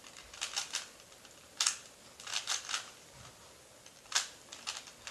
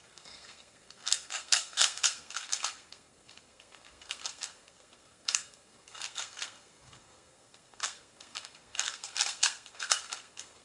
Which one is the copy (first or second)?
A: second